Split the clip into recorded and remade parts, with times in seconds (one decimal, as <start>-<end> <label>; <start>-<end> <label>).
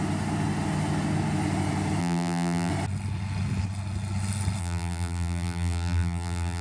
0.0-2.0 recorded; 2.0-2.7 remade; 2.7-4.6 recorded; 4.6-6.6 remade